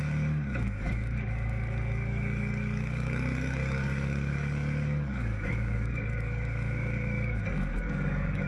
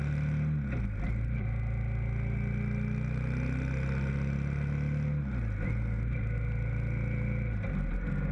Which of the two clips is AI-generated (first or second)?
first